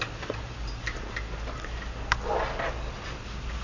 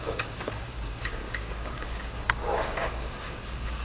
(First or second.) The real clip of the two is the first